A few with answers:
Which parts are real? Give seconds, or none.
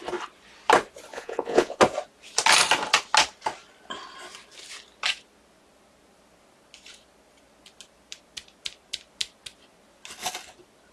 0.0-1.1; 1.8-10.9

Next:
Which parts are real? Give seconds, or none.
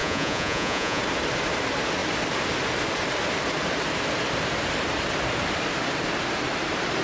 1.0-7.0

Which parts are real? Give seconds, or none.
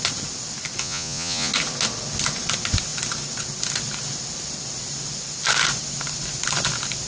0.0-0.8; 1.5-7.1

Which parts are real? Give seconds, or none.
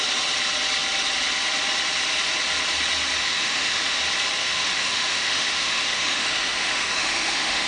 0.0-3.2; 4.0-4.4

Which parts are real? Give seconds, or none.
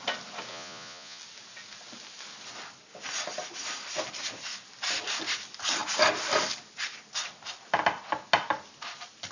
0.0-0.5; 1.2-9.3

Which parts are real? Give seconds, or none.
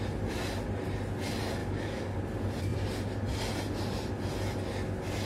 0.0-1.6; 2.2-5.3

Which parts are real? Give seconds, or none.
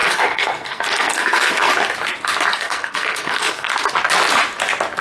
1.7-2.5; 3.7-5.0